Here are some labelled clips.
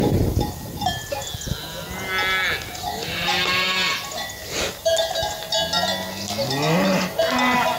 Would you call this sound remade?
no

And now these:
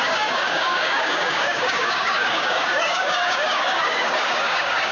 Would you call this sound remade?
yes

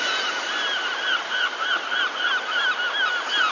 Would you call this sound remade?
yes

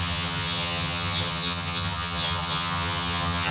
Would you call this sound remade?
yes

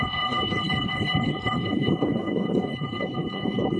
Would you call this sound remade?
yes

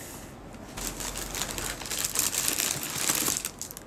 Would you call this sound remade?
no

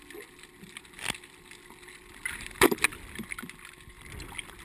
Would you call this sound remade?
no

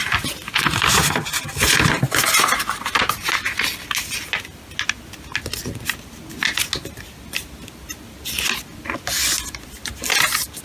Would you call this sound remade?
no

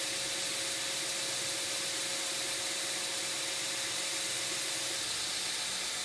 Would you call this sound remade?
no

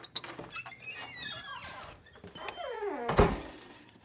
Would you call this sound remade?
no